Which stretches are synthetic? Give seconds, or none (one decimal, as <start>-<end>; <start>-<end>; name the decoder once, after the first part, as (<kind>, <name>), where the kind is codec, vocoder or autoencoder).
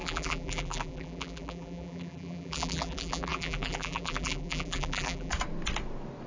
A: 0.0-5.3 (vocoder, BigVGAN v2)